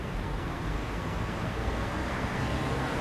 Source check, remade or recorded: remade